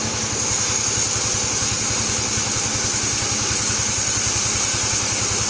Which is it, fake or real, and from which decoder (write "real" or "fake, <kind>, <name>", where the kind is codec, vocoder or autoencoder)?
real